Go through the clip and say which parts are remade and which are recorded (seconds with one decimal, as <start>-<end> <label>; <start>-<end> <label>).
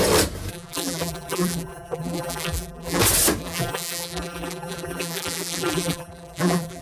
0.0-0.5 recorded; 0.5-3.0 remade; 3.0-3.4 recorded; 3.4-6.8 remade